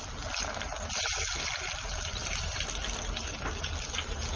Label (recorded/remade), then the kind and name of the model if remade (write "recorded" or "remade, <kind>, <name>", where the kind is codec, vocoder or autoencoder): recorded